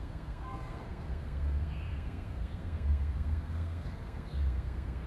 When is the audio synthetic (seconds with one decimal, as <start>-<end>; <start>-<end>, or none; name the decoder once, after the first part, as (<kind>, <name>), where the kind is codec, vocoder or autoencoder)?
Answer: 0.0-5.1 (codec, SNAC)